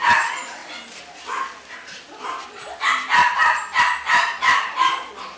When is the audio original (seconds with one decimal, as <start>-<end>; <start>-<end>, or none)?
0.6-3.8